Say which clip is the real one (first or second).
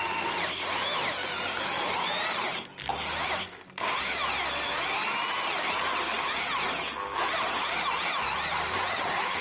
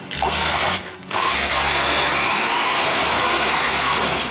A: first